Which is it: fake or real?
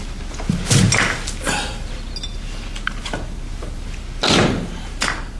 real